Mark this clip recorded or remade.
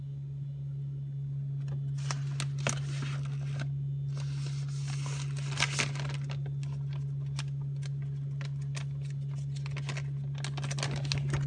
recorded